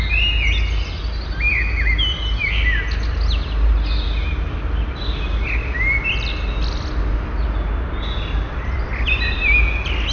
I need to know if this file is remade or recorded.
recorded